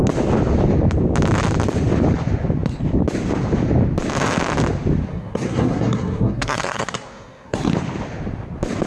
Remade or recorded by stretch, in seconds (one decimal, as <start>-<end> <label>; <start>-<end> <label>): 0.0-5.1 recorded; 5.1-7.7 remade; 7.7-8.9 recorded